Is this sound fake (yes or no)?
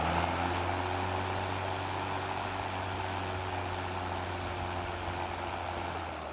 no